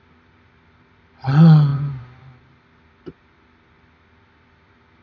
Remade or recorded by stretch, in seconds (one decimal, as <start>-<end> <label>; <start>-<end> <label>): 0.0-1.7 recorded; 1.7-2.2 remade; 2.2-5.0 recorded